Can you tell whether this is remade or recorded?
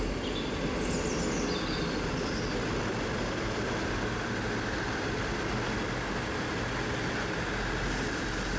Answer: recorded